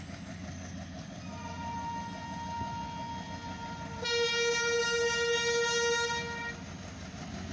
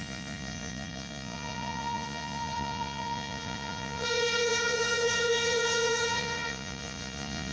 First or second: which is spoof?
second